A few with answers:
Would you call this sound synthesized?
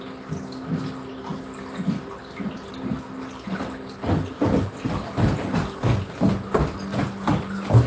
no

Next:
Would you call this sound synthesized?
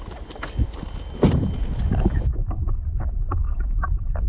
no